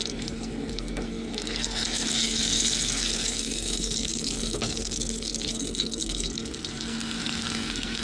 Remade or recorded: remade